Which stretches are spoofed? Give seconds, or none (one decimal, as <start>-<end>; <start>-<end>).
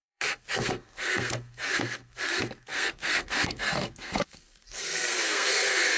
0.0-6.0